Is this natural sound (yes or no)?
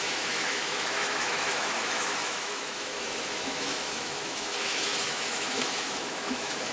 no